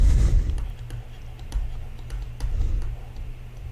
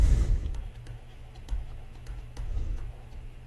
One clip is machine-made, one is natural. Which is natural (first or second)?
first